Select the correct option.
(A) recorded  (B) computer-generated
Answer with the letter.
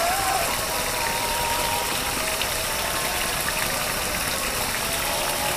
A